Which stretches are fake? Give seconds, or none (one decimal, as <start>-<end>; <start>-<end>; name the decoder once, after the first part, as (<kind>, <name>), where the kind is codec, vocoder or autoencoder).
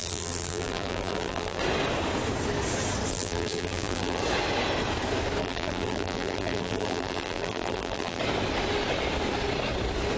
0.0-1.6 (vocoder, BigVGAN v2); 3.1-4.2; 5.4-8.2